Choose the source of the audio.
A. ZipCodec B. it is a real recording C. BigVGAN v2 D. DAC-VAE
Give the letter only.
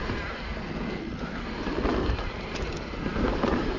B